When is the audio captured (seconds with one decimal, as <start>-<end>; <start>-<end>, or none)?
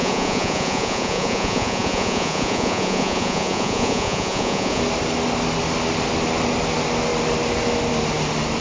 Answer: 4.8-8.6